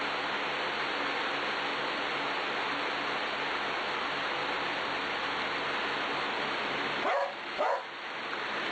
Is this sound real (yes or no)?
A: yes